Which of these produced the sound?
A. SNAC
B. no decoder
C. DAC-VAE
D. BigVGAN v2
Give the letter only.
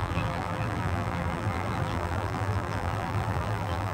D